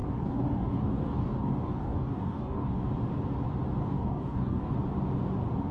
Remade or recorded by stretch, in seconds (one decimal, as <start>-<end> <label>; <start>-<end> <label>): 0.0-2.7 remade; 2.7-3.8 recorded; 3.8-4.7 remade; 4.7-5.7 recorded